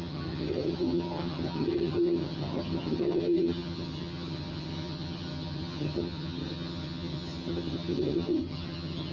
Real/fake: fake